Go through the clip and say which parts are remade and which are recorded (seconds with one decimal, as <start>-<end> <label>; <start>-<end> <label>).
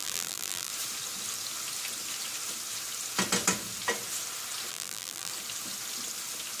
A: 0.0-0.7 remade; 0.7-4.7 recorded; 4.7-5.3 remade; 5.3-6.6 recorded